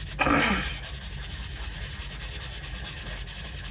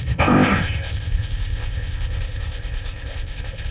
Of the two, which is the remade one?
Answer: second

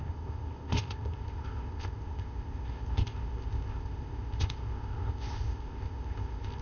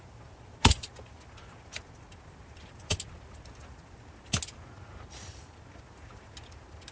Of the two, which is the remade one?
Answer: first